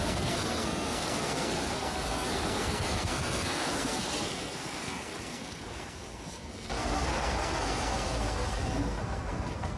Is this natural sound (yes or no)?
no